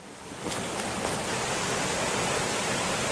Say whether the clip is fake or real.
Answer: real